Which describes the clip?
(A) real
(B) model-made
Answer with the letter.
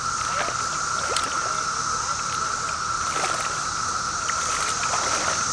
A